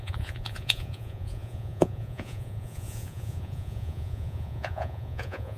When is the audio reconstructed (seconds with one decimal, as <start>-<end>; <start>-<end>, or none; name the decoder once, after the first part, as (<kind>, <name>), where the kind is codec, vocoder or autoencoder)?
0.0-5.6 (vocoder, Vocos)